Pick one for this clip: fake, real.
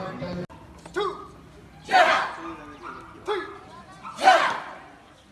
real